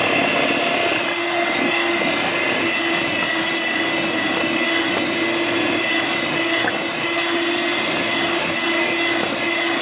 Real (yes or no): yes